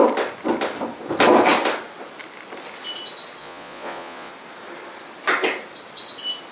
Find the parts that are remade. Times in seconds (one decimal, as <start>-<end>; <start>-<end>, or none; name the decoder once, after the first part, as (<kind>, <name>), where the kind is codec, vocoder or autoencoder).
3.4-4.3 (vocoder, Vocos)